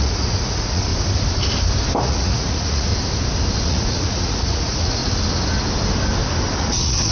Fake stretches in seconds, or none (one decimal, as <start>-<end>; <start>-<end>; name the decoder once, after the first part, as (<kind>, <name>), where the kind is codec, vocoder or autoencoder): 0.0-0.9 (vocoder, Vocos); 2.0-2.9; 3.6-5.0; 6.6-7.1